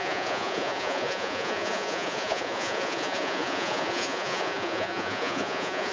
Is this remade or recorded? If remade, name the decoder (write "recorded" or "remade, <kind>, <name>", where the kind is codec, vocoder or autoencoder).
remade, vocoder, Vocos